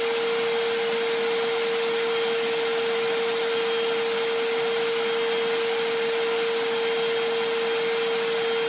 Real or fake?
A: real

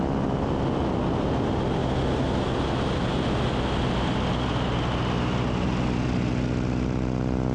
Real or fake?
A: real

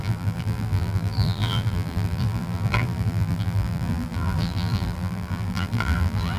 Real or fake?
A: fake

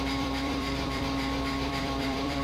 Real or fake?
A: fake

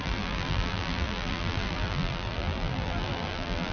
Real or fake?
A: fake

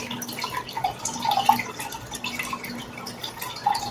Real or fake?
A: fake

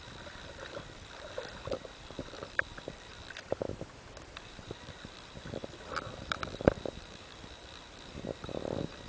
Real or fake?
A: fake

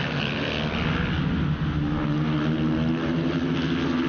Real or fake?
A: real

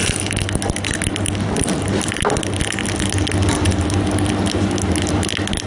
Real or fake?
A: real